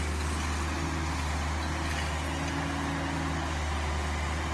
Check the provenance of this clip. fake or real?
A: real